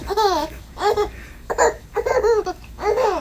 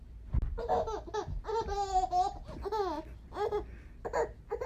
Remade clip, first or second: first